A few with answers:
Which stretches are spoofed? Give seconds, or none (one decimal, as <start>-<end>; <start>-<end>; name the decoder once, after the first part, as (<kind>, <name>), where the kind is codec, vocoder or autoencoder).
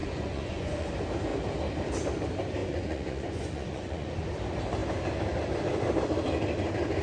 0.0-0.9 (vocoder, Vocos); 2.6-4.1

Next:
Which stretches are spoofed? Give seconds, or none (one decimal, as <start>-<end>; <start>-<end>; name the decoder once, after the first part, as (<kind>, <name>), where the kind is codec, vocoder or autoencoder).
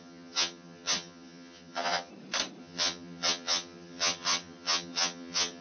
0.0-2.1 (vocoder, HiFi-GAN); 2.6-5.6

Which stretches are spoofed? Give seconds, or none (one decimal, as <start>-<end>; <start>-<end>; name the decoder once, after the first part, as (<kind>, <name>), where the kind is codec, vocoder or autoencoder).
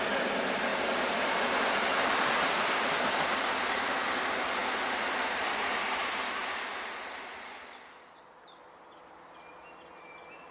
none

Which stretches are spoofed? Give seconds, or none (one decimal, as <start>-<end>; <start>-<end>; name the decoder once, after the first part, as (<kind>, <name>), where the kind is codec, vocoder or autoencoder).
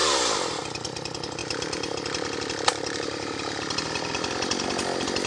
1.4-4.6 (vocoder, BigVGAN v2)